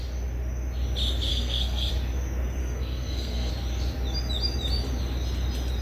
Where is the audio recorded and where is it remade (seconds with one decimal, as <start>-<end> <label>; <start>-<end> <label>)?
0.0-1.3 recorded; 1.3-1.9 remade; 1.9-2.6 recorded; 2.6-3.5 remade; 3.5-5.8 recorded